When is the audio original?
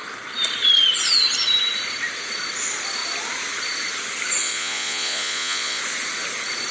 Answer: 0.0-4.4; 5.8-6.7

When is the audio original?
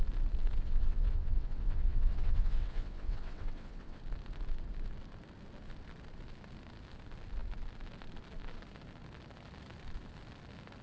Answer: 0.0-0.6; 4.0-10.8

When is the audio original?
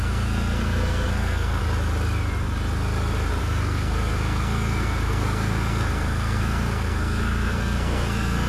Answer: 1.6-3.4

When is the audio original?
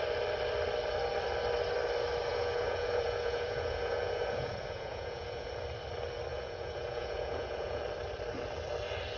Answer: 0.0-2.3; 5.5-6.3; 7.8-9.2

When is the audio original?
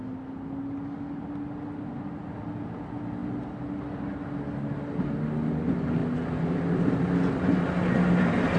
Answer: 0.0-8.6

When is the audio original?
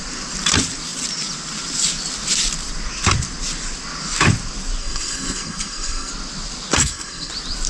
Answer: 0.0-4.8; 6.1-6.8; 7.3-7.7